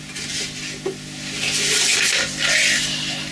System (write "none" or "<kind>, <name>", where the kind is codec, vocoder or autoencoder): none